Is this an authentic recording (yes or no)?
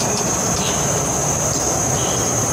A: no